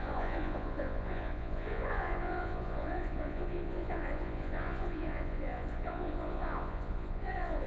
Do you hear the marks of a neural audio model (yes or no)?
yes